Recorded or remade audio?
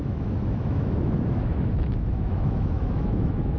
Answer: remade